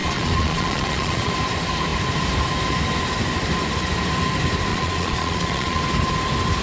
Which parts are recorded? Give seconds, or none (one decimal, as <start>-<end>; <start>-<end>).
1.3-4.7; 5.8-6.6